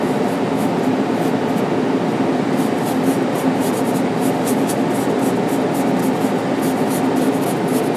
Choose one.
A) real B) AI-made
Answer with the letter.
A